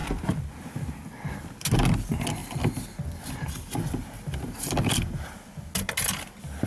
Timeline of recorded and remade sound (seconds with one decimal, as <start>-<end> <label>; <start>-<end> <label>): 0.0-6.7 recorded